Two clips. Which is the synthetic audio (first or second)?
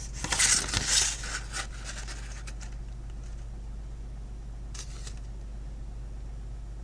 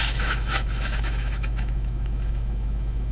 second